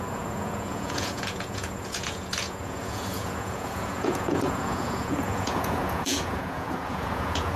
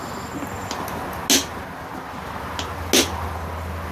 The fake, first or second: first